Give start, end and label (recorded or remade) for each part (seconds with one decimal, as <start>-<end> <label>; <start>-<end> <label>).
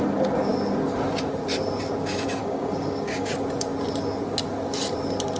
0.0-2.4 recorded; 2.4-3.3 remade; 3.3-5.4 recorded